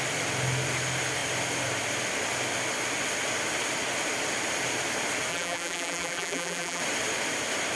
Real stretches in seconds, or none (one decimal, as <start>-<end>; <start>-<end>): 0.0-5.3; 6.8-7.8